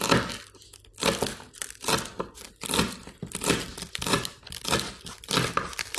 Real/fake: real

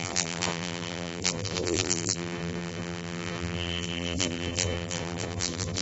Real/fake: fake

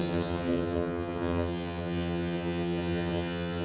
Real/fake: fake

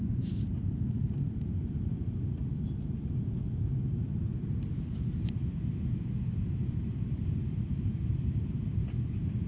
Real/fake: fake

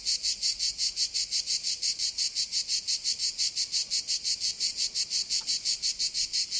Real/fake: real